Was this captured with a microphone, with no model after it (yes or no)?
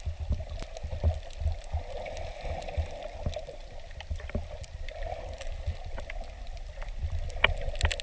yes